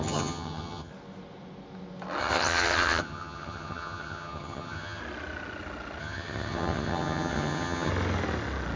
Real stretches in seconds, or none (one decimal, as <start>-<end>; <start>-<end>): 0.9-2.2; 5.0-6.0; 7.9-8.8